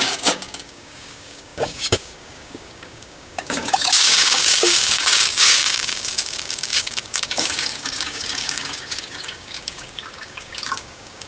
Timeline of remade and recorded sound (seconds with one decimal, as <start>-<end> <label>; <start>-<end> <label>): 0.0-11.3 remade